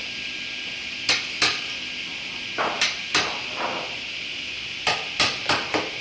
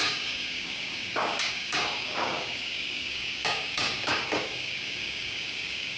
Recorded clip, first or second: first